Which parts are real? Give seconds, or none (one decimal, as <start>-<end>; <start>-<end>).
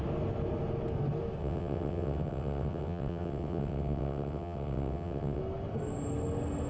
0.0-1.4; 5.4-6.7